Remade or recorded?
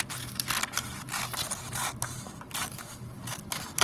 recorded